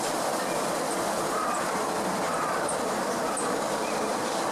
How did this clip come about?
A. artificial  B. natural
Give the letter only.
B